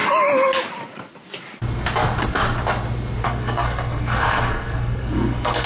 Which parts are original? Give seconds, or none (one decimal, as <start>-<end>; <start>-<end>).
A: 0.0-3.2